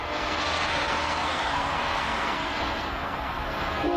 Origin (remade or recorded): remade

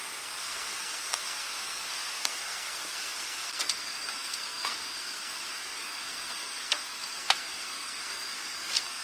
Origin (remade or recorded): remade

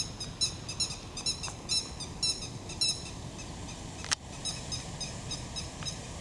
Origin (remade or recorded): recorded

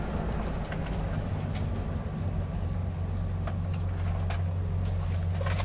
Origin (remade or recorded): recorded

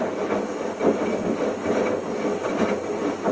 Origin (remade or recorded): recorded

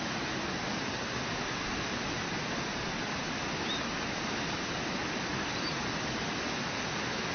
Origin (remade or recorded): recorded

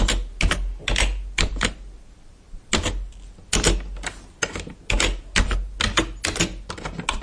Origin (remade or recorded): recorded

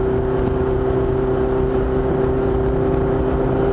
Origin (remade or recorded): recorded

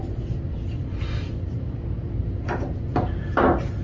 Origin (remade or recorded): recorded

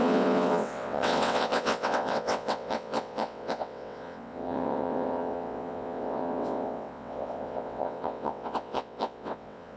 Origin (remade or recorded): remade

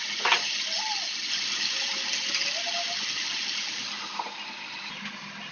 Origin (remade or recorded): recorded